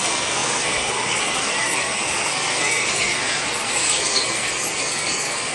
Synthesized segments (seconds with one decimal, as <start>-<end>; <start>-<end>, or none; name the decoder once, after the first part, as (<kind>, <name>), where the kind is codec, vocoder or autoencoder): 0.0-5.5 (codec, SNAC)